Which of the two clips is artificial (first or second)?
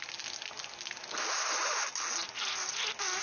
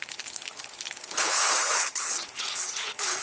second